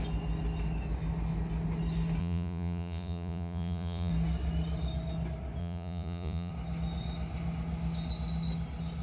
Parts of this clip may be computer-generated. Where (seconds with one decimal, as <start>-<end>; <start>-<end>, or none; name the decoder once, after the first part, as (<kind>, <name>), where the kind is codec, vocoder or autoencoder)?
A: 2.2-4.1 (vocoder, Vocos); 5.6-6.5